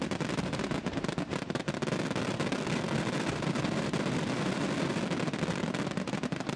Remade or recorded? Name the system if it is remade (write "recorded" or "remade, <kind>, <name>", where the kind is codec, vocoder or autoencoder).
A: remade, vocoder, BigVGAN v2